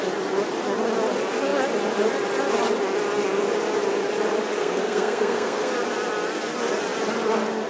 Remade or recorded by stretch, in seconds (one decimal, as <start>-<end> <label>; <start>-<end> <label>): 0.0-4.6 recorded; 4.6-5.7 remade; 5.7-7.7 recorded

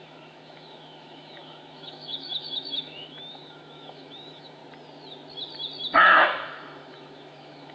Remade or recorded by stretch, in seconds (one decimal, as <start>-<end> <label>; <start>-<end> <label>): 0.0-4.6 remade; 4.6-6.1 recorded; 6.1-7.7 remade

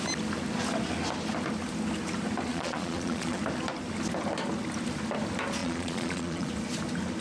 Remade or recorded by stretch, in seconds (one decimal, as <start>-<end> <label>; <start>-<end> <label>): 0.0-2.5 recorded; 2.5-3.4 remade; 3.4-5.6 recorded; 5.6-6.5 remade; 6.5-7.2 recorded

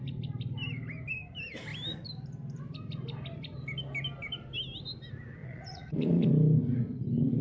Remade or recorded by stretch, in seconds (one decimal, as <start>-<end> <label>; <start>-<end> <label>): 0.0-5.4 recorded; 5.4-6.3 remade; 6.3-7.4 recorded

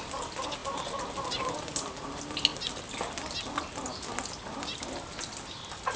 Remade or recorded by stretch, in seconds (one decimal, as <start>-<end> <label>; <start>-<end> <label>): 0.0-6.0 recorded

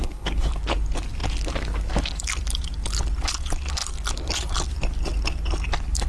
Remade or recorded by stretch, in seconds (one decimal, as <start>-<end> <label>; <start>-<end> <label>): 0.0-0.5 remade; 0.5-6.1 recorded

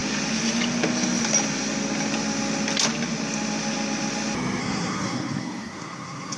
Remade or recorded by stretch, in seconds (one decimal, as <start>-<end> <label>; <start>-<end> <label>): 0.0-4.6 recorded; 4.6-6.4 remade